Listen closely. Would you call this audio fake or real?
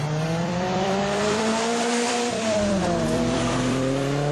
fake